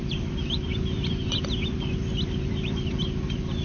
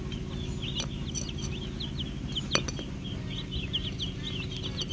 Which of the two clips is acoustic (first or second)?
second